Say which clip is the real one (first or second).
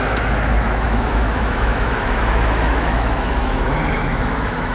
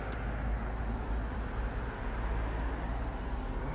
second